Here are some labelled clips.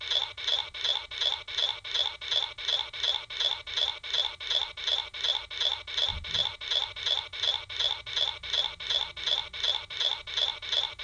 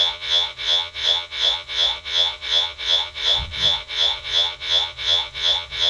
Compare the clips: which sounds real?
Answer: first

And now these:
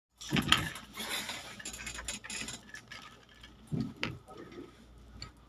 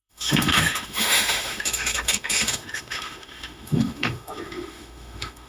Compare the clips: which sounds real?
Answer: first